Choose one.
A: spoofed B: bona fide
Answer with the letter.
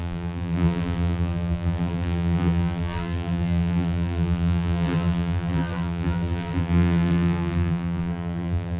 A